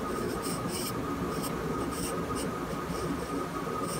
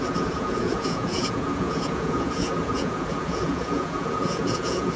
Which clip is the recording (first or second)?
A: first